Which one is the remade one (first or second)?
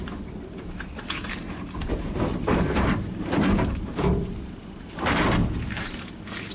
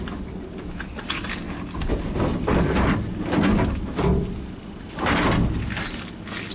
first